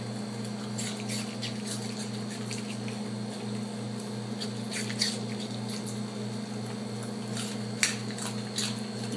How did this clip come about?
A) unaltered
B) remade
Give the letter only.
A